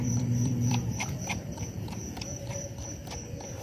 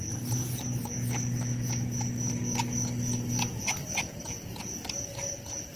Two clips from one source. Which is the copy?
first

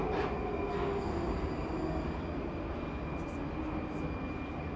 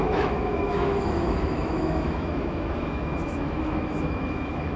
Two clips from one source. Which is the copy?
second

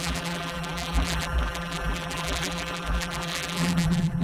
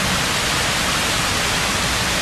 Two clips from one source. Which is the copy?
first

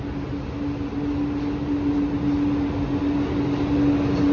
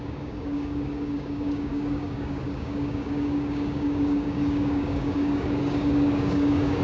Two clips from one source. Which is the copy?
second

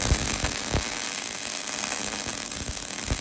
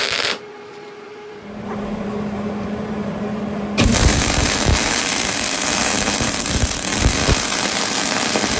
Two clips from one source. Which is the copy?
second